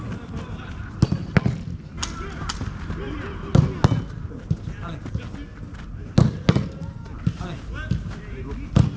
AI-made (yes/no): no